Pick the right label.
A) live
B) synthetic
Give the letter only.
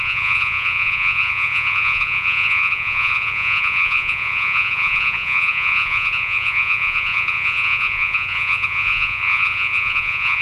B